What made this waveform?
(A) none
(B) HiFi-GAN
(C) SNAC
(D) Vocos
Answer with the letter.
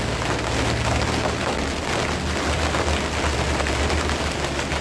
A